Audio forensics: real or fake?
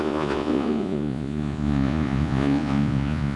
fake